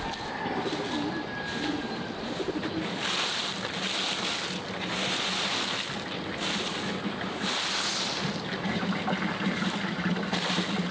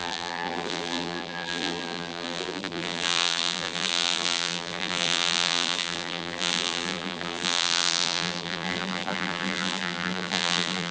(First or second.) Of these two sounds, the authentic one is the first